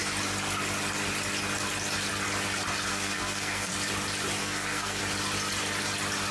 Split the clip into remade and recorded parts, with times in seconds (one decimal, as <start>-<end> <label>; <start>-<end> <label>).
0.0-2.9 recorded; 2.9-3.7 remade; 3.7-4.4 recorded; 4.4-5.0 remade; 5.0-6.3 recorded

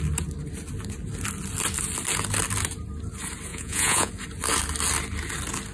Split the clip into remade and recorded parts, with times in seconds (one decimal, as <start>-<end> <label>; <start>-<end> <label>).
0.0-3.5 recorded; 3.5-4.1 remade; 4.1-5.7 recorded